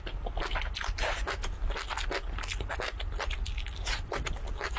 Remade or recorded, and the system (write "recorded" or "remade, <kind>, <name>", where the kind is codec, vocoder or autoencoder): recorded